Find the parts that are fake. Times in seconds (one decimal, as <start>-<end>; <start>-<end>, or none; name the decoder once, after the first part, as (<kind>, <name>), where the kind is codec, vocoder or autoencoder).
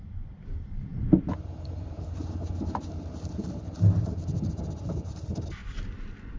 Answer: none